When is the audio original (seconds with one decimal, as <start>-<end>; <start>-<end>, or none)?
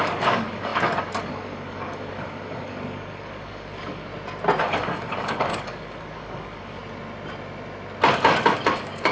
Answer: 4.1-4.6; 6.8-8.1